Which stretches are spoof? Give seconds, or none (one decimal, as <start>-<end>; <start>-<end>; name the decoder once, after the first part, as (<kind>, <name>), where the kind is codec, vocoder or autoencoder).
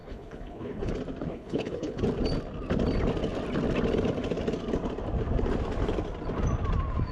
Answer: 0.0-0.9 (codec, HILCodec); 1.3-2.0